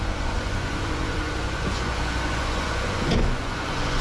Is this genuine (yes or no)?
no